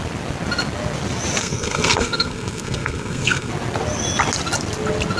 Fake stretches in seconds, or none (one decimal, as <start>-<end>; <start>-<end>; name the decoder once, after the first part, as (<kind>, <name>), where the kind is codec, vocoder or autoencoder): 1.4-3.5 (codec, SNAC)